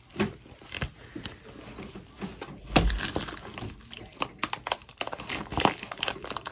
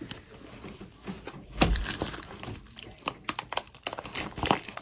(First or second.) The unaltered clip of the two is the first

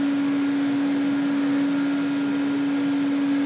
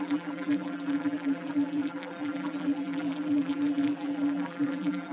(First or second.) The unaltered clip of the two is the first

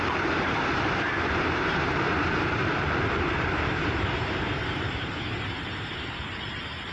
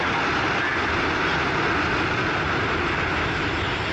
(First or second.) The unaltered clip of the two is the second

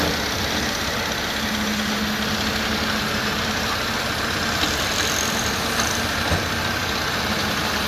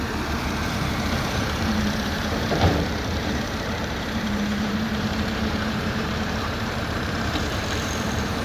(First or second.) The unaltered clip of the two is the first